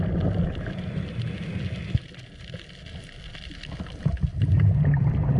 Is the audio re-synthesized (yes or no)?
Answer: no